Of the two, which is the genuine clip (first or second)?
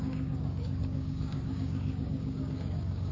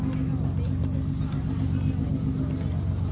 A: second